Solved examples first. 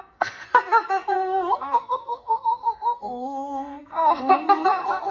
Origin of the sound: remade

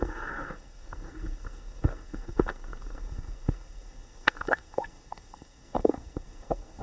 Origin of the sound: remade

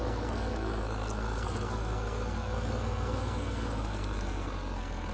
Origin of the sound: remade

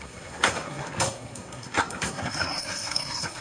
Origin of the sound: remade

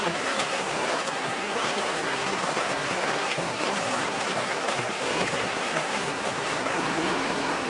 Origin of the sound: remade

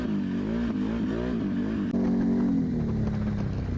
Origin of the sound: recorded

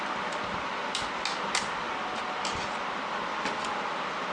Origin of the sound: recorded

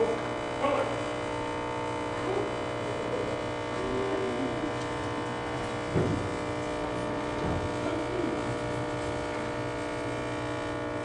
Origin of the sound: recorded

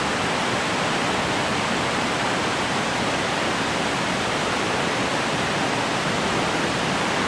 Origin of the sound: recorded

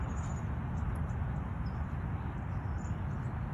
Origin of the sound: recorded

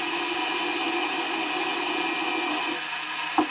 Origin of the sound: recorded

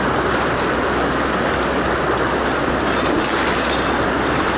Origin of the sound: recorded